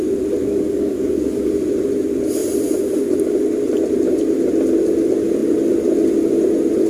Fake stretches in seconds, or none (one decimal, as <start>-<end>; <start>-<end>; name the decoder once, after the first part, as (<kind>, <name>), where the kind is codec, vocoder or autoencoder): 0.4-1.5 (codec, DAC)